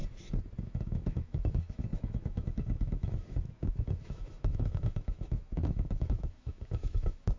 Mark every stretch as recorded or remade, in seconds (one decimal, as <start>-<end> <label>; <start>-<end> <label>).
0.0-0.6 recorded; 0.6-7.4 remade